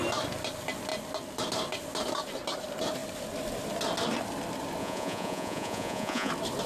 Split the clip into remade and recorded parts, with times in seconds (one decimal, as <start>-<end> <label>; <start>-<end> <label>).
0.0-4.8 recorded; 4.8-6.3 remade; 6.3-6.7 recorded